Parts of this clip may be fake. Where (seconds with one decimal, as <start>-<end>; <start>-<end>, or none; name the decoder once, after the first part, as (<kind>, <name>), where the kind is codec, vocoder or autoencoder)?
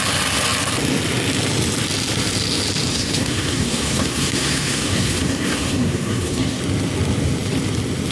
2.9-6.6 (codec, SNAC)